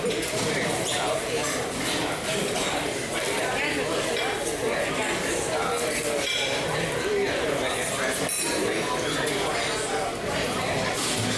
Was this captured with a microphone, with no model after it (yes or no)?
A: yes